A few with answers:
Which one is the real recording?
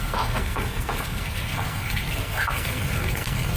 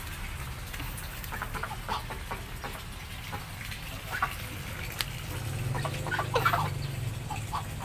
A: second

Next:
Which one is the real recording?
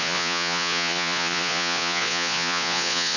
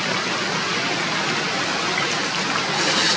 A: second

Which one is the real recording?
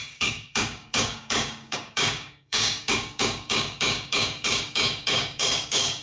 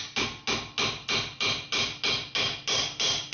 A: second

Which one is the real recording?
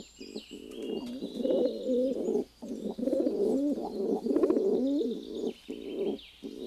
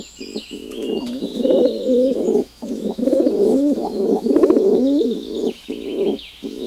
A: first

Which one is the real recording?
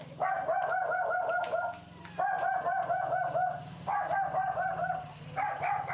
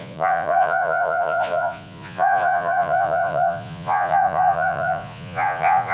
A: first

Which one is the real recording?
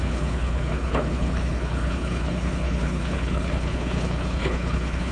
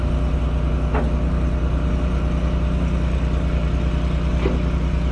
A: second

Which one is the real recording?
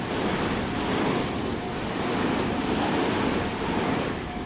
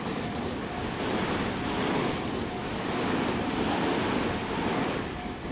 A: first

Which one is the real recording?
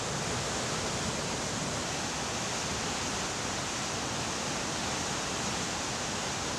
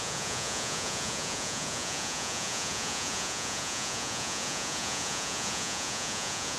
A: first